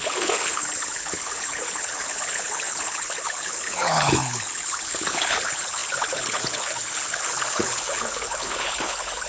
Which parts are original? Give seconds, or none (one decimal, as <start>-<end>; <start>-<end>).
none